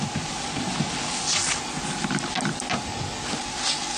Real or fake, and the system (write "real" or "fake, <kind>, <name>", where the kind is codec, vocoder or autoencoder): real